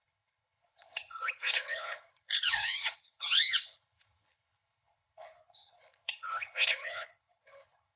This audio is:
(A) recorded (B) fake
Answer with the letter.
B